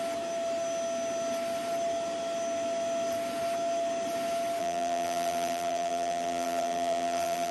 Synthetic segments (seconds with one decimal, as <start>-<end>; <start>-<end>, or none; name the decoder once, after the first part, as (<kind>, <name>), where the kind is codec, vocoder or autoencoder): 4.6-7.5 (vocoder, BigVGAN v2)